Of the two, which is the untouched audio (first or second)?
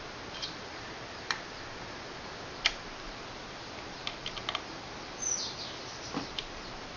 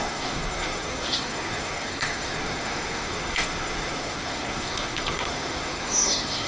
first